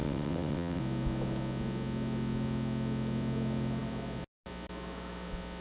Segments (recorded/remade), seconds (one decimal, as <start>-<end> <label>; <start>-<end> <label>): 0.0-0.8 remade; 0.8-5.6 recorded